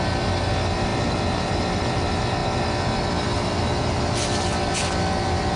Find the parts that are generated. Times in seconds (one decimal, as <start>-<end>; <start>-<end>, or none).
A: none